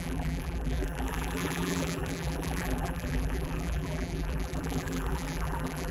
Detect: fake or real fake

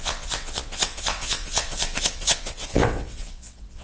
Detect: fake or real fake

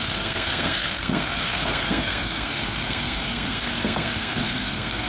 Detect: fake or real fake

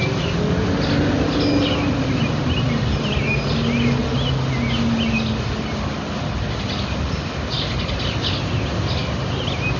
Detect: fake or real real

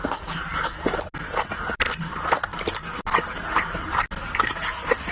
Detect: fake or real real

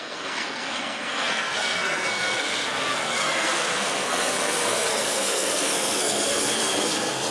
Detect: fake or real fake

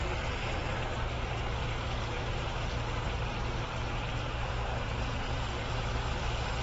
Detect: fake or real fake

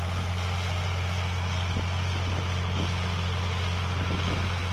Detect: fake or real real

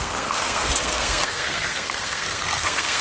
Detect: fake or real fake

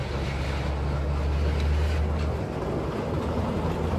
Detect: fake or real real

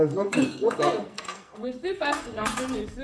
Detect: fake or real fake